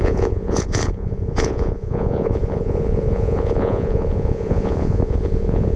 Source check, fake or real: fake